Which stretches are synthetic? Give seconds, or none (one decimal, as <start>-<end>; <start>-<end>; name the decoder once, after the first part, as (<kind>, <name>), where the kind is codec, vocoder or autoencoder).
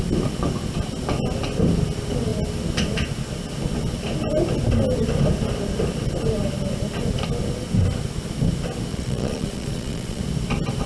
8.9-10.2 (vocoder, Vocos)